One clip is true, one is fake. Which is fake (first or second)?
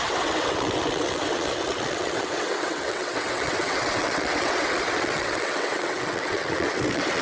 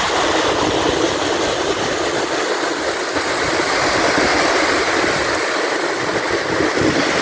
first